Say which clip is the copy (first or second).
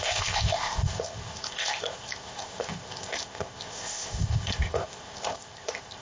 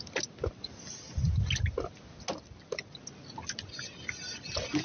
first